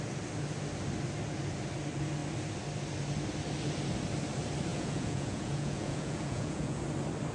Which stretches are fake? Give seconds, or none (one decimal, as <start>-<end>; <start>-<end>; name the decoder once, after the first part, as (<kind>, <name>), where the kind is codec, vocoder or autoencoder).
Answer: 4.7-6.8 (vocoder, Vocos)